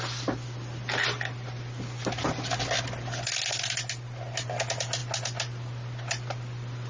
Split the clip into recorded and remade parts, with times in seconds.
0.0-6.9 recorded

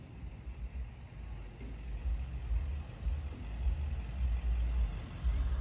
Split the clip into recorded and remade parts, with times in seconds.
0.0-2.1 recorded; 2.1-2.7 remade; 2.7-5.6 recorded

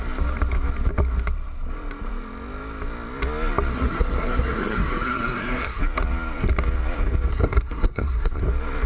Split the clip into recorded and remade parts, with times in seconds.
0.0-3.7 recorded; 3.7-5.8 remade; 5.8-7.3 recorded; 7.3-8.4 remade; 8.4-8.9 recorded

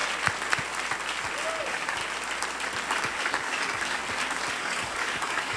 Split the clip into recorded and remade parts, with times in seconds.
0.0-1.6 recorded; 1.6-2.0 remade; 2.0-3.0 recorded; 3.0-4.0 remade; 4.0-4.5 recorded; 4.5-5.6 remade

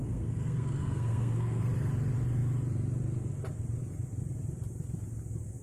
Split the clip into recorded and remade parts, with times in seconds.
0.0-1.6 remade; 1.6-5.6 recorded

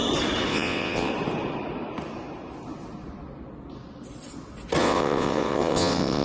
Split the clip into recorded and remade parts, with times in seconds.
0.0-0.5 recorded; 0.5-1.1 remade; 1.1-4.8 recorded; 4.8-6.2 remade

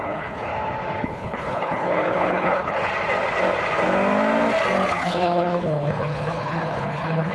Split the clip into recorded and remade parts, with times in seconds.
0.0-0.5 remade; 0.5-1.0 recorded; 1.0-2.9 remade; 2.9-4.9 recorded; 4.9-7.3 remade